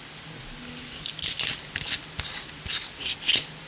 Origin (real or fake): real